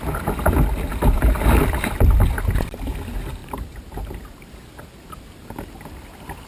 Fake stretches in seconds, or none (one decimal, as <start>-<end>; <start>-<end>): 0.9-1.9; 3.4-4.5